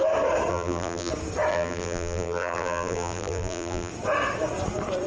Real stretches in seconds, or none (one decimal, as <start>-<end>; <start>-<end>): 0.0-0.5; 1.1-1.5; 3.9-5.1